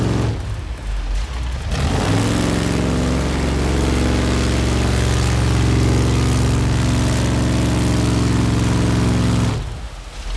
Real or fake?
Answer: real